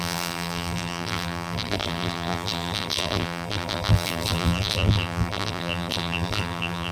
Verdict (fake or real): fake